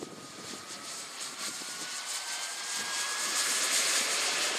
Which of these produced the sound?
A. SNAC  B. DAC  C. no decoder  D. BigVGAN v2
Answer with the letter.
D